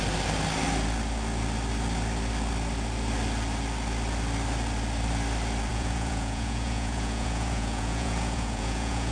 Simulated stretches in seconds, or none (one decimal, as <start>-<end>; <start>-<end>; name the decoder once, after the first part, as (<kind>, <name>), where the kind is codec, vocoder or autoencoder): 5.7-9.1 (vocoder, Vocos)